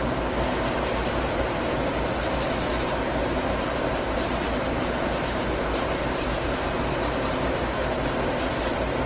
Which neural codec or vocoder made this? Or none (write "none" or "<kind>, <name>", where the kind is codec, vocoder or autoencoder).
vocoder, BigVGAN v2